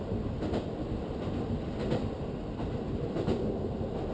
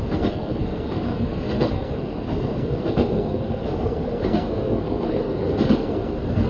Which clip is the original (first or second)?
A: first